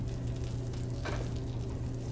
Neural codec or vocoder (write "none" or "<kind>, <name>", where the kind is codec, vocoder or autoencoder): none